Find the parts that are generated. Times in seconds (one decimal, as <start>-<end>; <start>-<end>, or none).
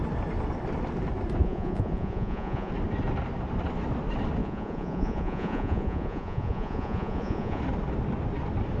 1.4-2.7; 4.4-7.6